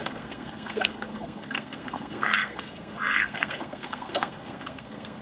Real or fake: fake